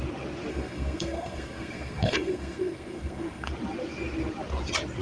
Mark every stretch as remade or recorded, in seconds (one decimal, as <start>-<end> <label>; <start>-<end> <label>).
0.0-0.5 recorded; 0.5-3.5 remade; 3.5-5.0 recorded